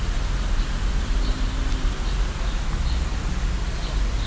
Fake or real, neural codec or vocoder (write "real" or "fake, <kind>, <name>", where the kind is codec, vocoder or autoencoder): real